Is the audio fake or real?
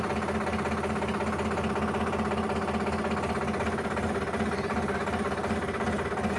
real